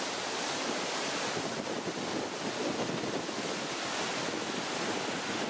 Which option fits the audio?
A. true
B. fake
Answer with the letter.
A